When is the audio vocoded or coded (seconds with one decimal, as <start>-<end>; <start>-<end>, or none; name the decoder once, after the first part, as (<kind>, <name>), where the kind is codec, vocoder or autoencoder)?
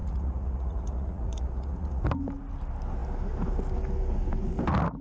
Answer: 0.0-2.0 (vocoder, Vocos)